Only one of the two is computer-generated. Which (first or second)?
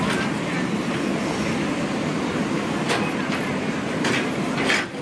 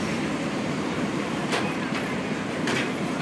second